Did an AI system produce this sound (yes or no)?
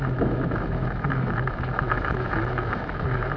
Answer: yes